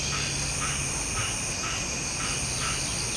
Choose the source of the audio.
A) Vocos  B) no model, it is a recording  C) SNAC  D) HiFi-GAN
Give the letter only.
B